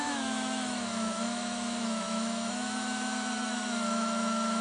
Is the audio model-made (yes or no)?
yes